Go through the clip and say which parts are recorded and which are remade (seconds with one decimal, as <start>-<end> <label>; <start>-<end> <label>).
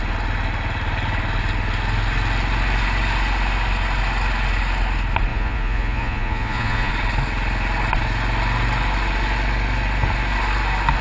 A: 0.0-5.3 recorded; 5.3-6.9 remade; 6.9-11.0 recorded